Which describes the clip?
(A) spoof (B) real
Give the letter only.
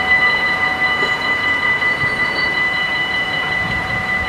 A